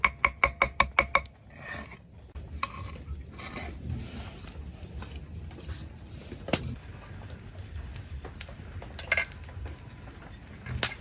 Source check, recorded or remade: recorded